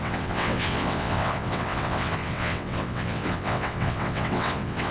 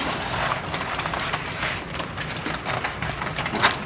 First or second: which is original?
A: second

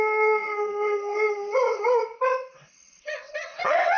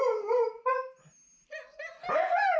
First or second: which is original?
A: second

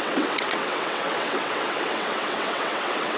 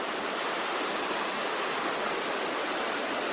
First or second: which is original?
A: second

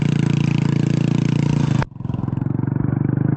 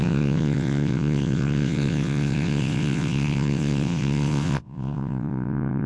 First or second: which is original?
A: first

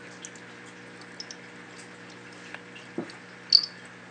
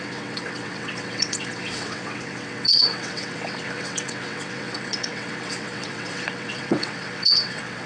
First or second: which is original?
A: first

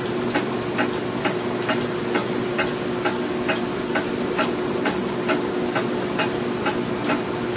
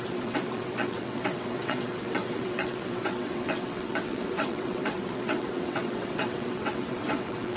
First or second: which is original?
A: first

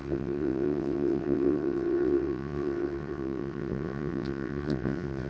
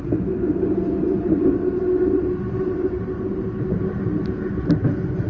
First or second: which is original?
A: second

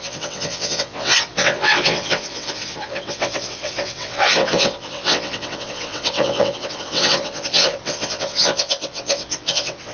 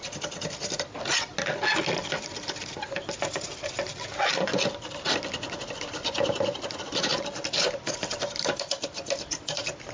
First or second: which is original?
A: second